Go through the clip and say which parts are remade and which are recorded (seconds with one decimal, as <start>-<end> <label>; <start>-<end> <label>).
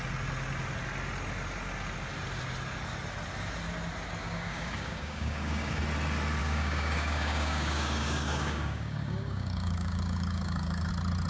0.0-4.2 recorded; 4.2-5.8 remade; 5.8-6.4 recorded; 6.4-10.9 remade; 10.9-11.3 recorded